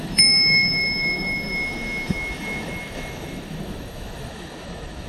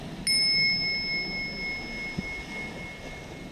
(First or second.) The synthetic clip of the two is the first